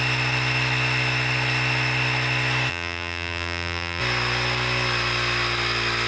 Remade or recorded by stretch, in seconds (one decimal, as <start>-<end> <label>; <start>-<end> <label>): 0.0-2.7 recorded; 2.7-4.0 remade; 4.0-6.1 recorded